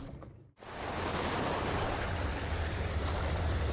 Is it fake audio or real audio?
fake